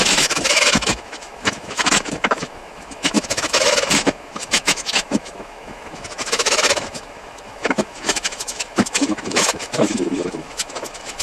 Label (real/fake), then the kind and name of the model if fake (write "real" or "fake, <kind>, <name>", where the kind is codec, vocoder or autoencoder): fake, autoencoder, DAC-VAE